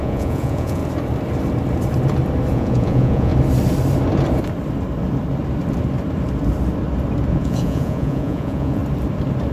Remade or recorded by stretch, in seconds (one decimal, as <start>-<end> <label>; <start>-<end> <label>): 0.0-0.8 remade; 0.8-2.5 recorded; 2.5-3.3 remade; 3.3-7.3 recorded; 7.3-8.8 remade; 8.8-9.5 recorded